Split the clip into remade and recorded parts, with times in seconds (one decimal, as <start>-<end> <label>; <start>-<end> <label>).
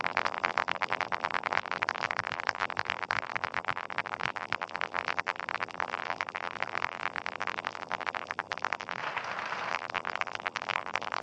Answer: 0.0-9.0 remade; 9.0-9.7 recorded; 9.7-11.2 remade